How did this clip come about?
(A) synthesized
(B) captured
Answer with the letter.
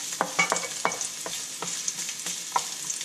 B